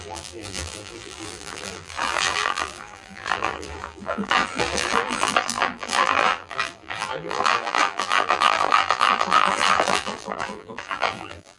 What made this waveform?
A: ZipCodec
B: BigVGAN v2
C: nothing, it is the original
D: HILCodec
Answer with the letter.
B